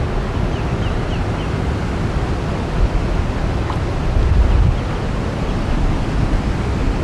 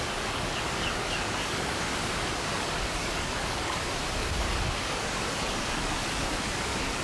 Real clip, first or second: first